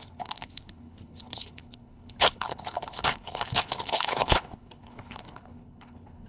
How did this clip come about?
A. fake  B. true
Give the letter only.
A